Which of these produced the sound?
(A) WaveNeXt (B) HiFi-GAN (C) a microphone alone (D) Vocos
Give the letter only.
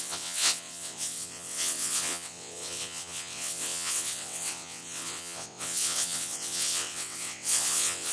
A